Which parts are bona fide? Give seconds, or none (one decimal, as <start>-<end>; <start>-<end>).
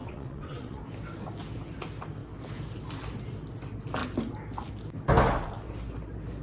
0.8-6.4